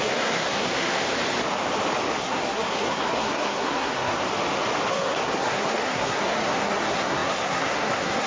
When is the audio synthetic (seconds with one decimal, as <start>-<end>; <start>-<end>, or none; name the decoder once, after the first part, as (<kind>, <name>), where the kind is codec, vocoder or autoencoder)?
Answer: 0.0-1.0 (codec, SNAC); 2.2-4.2; 4.9-8.3